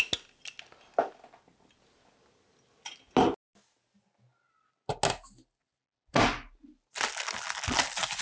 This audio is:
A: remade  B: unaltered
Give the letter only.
B